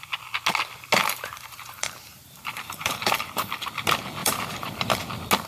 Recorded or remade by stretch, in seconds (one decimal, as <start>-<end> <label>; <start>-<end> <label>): 0.0-1.0 recorded; 1.0-3.2 remade; 3.2-4.2 recorded; 4.2-5.0 remade; 5.0-5.5 recorded